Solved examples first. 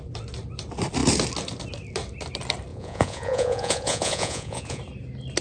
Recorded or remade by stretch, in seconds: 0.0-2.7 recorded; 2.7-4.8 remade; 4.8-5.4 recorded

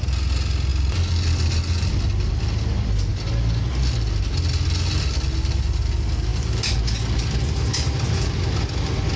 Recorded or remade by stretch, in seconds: 0.0-9.2 recorded

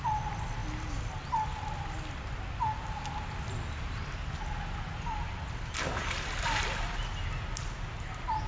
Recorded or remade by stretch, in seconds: 0.0-8.5 recorded

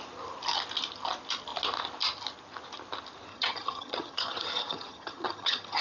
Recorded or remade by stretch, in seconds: 0.0-3.3 recorded; 3.3-5.8 remade